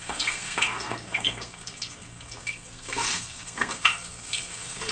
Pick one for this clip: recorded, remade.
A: remade